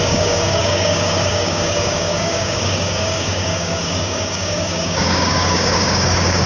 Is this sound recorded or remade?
remade